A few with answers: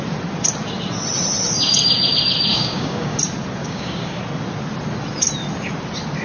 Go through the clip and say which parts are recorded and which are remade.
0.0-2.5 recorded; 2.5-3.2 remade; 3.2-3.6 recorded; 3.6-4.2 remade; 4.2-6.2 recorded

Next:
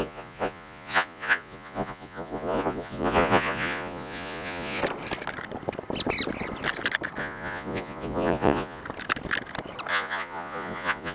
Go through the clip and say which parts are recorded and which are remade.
0.0-4.8 remade; 4.8-7.2 recorded; 7.2-8.8 remade; 8.8-9.9 recorded; 9.9-11.1 remade

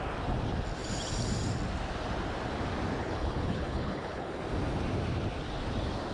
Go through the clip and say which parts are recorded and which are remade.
0.0-3.0 recorded; 3.0-4.4 remade; 4.4-6.1 recorded

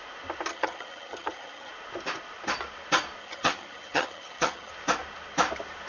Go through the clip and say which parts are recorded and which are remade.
0.0-0.5 recorded; 0.5-1.7 remade; 1.7-3.2 recorded; 3.2-4.7 remade; 4.7-5.9 recorded

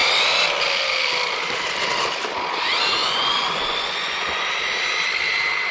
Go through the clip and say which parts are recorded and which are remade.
0.0-3.0 recorded; 3.0-4.5 remade; 4.5-5.7 recorded

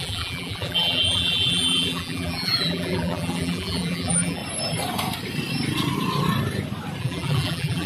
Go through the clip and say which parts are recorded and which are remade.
0.0-4.4 remade; 4.4-7.0 recorded; 7.0-7.9 remade

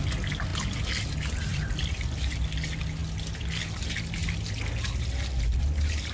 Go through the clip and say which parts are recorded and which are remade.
0.0-1.5 recorded; 1.5-2.1 remade; 2.1-6.1 recorded

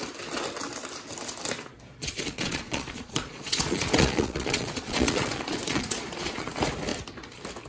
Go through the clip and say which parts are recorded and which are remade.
0.0-2.0 recorded; 2.0-6.5 remade; 6.5-7.7 recorded